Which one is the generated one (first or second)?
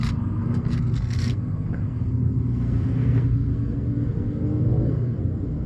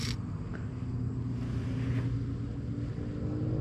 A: first